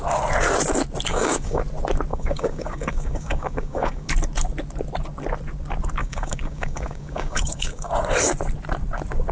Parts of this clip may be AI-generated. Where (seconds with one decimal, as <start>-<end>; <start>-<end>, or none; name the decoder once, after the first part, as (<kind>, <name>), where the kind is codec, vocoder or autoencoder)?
1.1-1.6 (codec, DAC); 2.1-4.1; 6.0-7.9